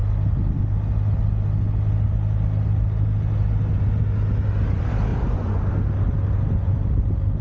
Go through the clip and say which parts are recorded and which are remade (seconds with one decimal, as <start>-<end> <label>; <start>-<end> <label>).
0.0-5.1 recorded; 5.1-5.6 remade; 5.6-7.4 recorded